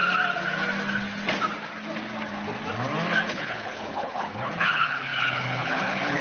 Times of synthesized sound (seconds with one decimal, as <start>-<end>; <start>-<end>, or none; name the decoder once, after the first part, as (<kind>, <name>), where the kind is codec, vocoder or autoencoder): 3.3-6.2 (codec, HILCodec)